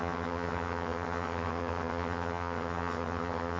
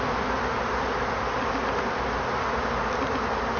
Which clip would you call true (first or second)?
second